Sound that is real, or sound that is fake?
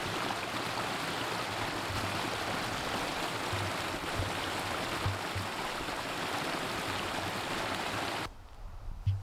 real